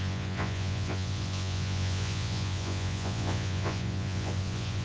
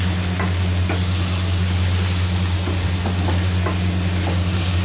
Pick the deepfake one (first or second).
first